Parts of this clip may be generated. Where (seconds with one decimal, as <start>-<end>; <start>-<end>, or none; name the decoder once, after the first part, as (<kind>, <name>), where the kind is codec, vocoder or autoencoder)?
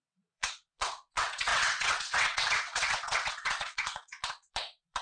0.0-5.0 (vocoder, WaveNeXt)